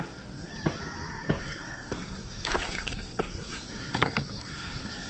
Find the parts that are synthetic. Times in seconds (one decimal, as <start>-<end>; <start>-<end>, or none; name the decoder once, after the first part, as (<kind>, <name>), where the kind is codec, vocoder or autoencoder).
0.0-0.5 (codec, SNAC); 1.4-5.1